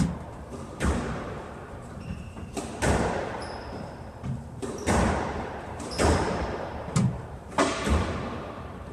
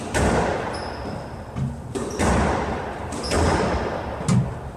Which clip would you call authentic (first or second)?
second